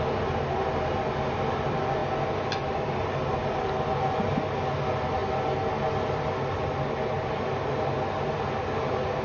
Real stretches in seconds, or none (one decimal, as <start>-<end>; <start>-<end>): 0.0-9.2